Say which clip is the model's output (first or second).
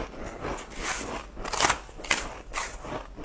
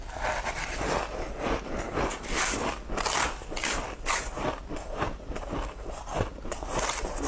second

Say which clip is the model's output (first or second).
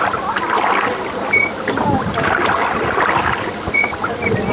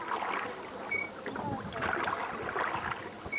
first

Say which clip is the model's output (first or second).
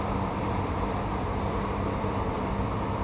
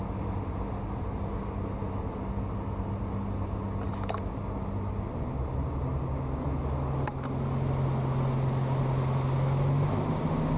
first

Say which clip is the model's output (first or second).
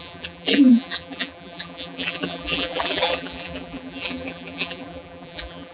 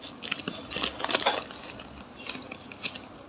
first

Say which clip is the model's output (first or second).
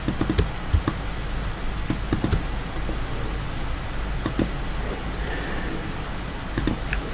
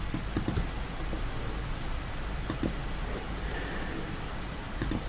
second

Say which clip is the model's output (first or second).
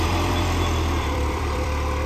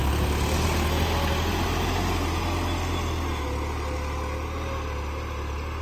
first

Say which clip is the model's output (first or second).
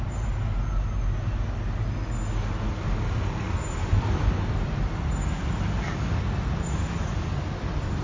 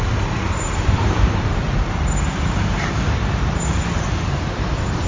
second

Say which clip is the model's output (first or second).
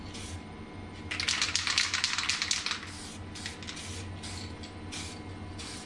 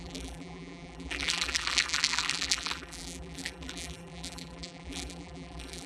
second